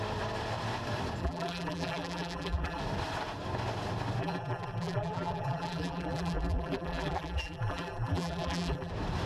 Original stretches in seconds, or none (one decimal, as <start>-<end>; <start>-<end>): 0.0-1.2; 2.8-4.2; 8.9-9.3